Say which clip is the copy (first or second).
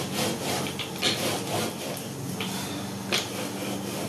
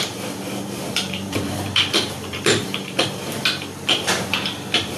second